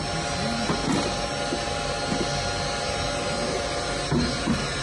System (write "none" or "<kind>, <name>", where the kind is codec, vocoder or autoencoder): none